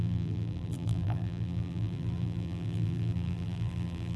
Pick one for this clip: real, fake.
fake